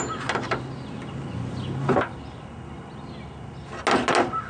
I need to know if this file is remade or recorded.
recorded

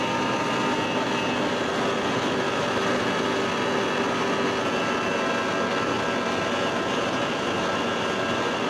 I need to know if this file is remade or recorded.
recorded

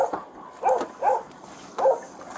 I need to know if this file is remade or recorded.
recorded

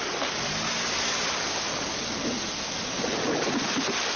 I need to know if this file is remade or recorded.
recorded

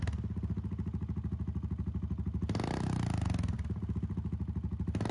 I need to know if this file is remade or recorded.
recorded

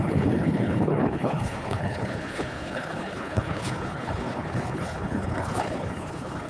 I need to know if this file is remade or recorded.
remade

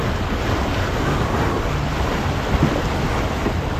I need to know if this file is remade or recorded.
recorded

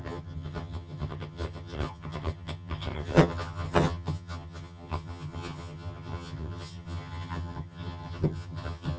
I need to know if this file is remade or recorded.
remade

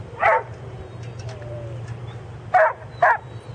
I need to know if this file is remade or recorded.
recorded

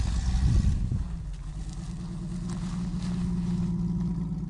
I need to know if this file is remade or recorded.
recorded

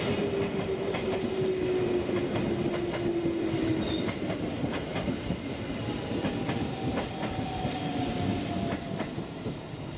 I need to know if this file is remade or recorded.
recorded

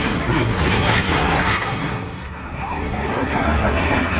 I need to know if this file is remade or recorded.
remade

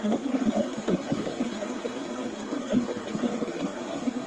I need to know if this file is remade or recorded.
remade